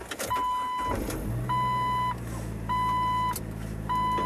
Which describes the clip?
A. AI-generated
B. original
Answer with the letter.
B